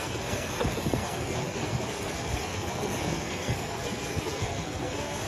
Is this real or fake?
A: fake